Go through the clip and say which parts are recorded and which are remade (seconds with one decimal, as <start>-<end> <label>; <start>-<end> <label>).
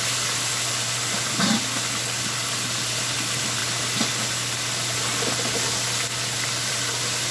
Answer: 0.0-7.3 recorded